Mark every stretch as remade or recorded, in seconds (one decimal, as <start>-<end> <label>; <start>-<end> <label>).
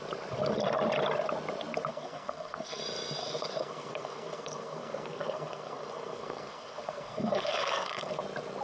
0.0-1.9 recorded; 1.9-2.8 remade; 2.8-3.2 recorded; 3.2-8.2 remade; 8.2-8.6 recorded